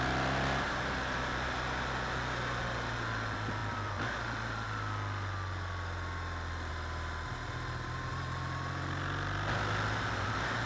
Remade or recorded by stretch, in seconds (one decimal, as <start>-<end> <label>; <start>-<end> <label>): 0.0-10.7 recorded